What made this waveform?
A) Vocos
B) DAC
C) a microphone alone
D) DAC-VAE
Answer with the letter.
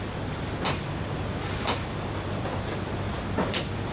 C